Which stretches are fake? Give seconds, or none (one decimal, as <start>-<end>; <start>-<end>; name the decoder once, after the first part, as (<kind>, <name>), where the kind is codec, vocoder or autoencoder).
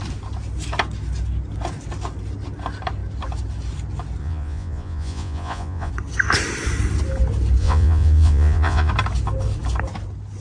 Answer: 4.2-5.9 (vocoder, Vocos); 7.6-8.9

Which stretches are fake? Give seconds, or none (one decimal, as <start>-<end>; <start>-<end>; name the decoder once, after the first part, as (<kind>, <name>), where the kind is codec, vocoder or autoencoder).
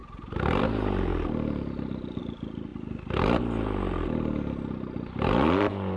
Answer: none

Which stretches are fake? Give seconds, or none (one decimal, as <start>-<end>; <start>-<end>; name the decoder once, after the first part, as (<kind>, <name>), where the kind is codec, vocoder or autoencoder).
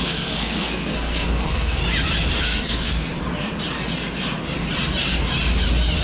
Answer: 0.0-1.8 (codec, SNAC); 2.4-3.1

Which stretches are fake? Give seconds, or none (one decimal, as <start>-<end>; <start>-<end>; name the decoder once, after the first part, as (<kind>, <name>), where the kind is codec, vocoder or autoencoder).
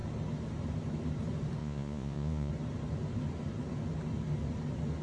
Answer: 1.6-2.5 (vocoder, Vocos)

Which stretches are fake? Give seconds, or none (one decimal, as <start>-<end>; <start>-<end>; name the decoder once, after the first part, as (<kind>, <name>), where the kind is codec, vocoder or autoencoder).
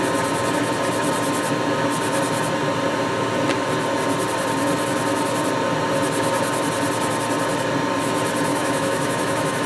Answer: 8.5-9.7 (autoencoder, DAC-VAE)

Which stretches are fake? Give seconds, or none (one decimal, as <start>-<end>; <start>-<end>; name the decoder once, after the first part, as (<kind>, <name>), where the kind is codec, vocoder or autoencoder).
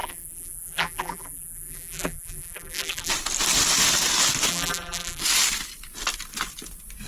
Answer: 0.0-3.1 (vocoder, BigVGAN v2); 4.5-5.2